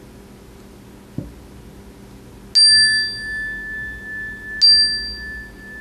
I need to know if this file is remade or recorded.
recorded